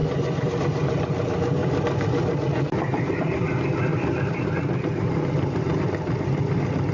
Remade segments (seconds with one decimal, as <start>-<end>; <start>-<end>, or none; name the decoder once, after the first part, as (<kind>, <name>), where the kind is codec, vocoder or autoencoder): 1.6-2.7 (vocoder, BigVGAN v2); 3.9-4.6